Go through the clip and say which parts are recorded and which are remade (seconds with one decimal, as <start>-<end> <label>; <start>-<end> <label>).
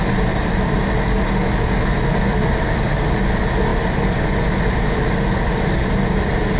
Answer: 0.0-6.6 recorded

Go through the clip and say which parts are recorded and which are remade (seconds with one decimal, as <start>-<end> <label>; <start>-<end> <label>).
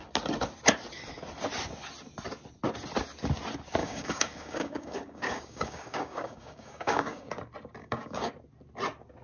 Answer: 0.0-3.8 recorded; 3.8-7.3 remade; 7.3-7.8 recorded; 7.8-8.3 remade; 8.3-9.2 recorded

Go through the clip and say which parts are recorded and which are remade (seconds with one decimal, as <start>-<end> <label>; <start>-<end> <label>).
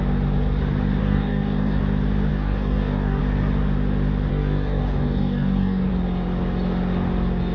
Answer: 0.0-1.0 recorded; 1.0-1.8 remade; 1.8-2.3 recorded; 2.3-3.2 remade; 3.2-4.3 recorded; 4.3-5.9 remade; 5.9-7.5 recorded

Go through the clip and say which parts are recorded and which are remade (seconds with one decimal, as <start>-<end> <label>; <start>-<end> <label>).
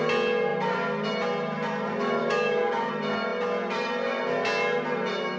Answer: 0.0-2.2 recorded; 2.2-2.9 remade; 2.9-5.4 recorded